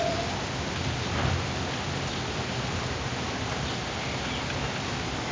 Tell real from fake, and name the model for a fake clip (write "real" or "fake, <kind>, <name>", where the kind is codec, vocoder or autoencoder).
real